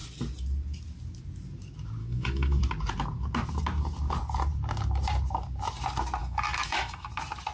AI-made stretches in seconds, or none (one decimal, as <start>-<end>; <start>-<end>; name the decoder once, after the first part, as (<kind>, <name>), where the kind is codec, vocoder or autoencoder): 2.0-2.6 (autoencoder, DAC-VAE); 6.2-7.1